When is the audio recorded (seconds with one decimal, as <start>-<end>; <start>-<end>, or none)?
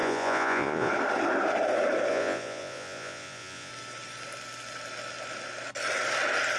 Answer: 0.9-2.1; 3.7-6.6